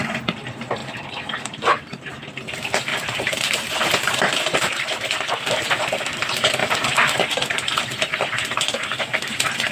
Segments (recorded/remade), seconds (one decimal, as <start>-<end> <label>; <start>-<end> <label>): 0.0-0.8 recorded; 0.8-2.1 remade; 2.1-2.9 recorded; 2.9-5.3 remade; 5.3-9.7 recorded